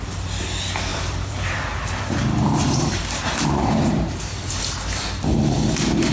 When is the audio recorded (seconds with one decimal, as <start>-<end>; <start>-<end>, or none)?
0.0-0.9; 4.6-6.1